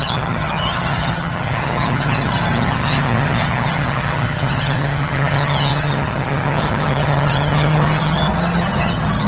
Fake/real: fake